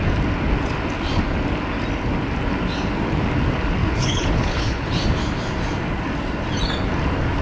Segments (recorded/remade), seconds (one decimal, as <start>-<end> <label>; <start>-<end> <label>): 0.0-3.8 recorded; 3.8-4.9 remade; 4.9-7.4 recorded